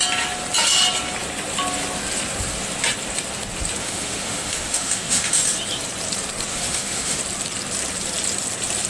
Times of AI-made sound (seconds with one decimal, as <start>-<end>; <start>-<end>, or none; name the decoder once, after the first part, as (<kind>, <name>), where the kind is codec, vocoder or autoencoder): 3.8-5.4 (autoencoder, DAC-VAE); 6.5-7.2